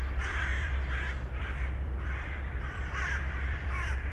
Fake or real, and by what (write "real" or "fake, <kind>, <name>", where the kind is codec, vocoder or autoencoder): fake, vocoder, BigVGAN v2